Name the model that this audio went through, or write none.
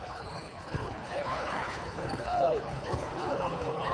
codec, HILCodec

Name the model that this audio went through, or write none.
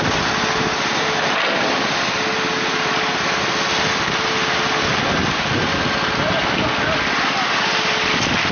none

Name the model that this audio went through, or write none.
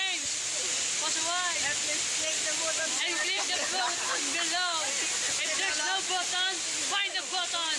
none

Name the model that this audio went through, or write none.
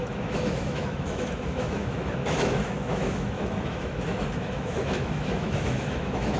autoencoder, DAC-VAE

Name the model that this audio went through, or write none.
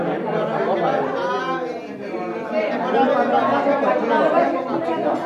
none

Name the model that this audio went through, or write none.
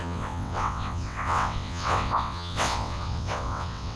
vocoder, WaveNeXt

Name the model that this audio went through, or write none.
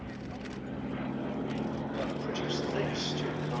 none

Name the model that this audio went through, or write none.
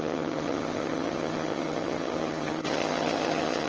vocoder, HiFi-GAN